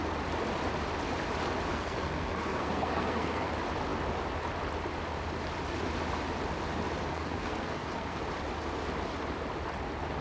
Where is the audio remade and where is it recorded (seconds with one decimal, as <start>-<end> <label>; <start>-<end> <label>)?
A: 0.0-1.7 recorded; 1.7-3.5 remade; 3.5-7.1 recorded; 7.1-8.2 remade; 8.2-10.2 recorded